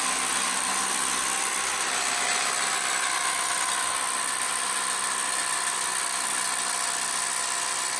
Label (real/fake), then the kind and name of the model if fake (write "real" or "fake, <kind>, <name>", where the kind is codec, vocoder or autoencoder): real